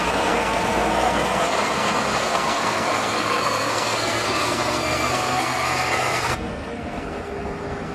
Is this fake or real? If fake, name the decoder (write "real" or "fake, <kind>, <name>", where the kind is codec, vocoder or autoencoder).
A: fake, codec, SNAC